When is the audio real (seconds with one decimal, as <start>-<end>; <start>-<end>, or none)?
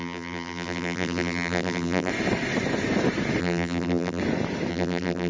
2.1-3.4; 4.2-4.7